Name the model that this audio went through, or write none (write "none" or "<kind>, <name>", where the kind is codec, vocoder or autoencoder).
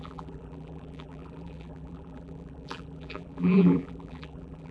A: vocoder, BigVGAN v2